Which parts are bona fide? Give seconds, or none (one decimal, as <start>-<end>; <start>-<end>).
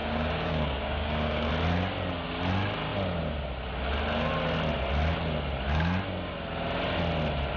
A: 1.5-7.6